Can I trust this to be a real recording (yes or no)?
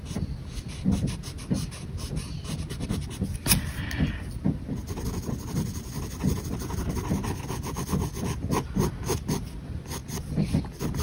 yes